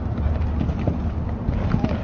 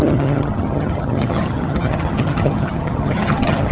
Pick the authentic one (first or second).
first